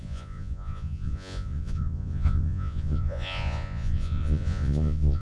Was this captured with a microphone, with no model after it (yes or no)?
no